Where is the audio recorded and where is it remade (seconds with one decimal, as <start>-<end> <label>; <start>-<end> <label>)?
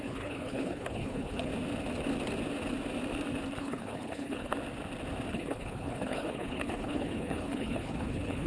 0.0-1.5 remade; 1.5-3.6 recorded; 3.6-4.5 remade; 4.5-5.3 recorded; 5.3-8.5 remade